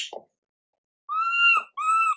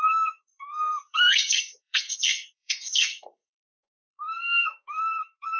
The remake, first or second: second